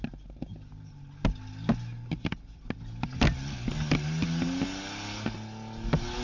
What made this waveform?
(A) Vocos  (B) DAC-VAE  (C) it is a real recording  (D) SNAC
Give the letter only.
C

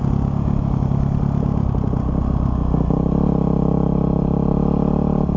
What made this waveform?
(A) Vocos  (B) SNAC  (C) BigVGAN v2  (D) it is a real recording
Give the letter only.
D